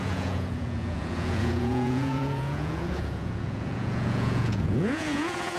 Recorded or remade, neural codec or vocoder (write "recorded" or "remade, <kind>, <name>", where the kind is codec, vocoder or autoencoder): remade, vocoder, Vocos